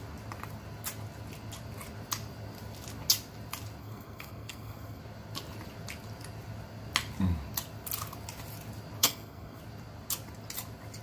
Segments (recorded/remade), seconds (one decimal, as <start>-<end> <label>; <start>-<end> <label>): 0.0-3.8 recorded; 3.8-5.0 remade; 5.0-9.0 recorded; 9.0-9.6 remade; 9.6-11.0 recorded

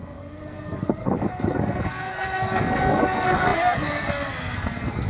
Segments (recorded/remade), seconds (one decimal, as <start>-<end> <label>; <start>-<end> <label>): 0.0-5.1 remade

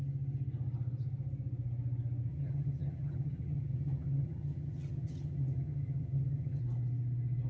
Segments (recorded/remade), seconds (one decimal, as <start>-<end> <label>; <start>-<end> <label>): 0.0-2.3 recorded; 2.3-6.6 remade; 6.6-7.5 recorded

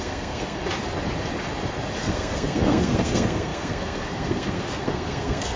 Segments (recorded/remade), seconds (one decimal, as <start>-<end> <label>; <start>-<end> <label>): 0.0-0.6 remade; 0.6-2.0 recorded; 2.0-5.6 remade

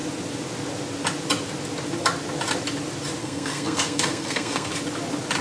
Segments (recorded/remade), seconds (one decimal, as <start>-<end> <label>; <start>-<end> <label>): 0.0-3.2 recorded; 3.2-4.7 remade; 4.7-5.4 recorded

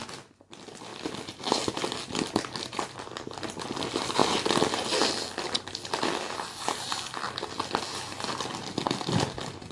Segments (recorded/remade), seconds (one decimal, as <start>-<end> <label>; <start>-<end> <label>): 0.0-9.7 recorded

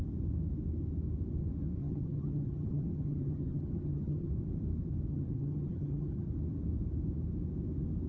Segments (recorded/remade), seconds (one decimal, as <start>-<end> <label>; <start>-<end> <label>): 0.0-1.8 recorded; 1.8-4.3 remade; 4.3-5.1 recorded; 5.1-6.3 remade; 6.3-8.1 recorded

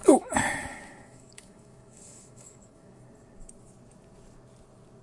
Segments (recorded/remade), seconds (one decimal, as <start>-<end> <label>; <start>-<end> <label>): 0.0-3.0 remade; 3.0-5.0 recorded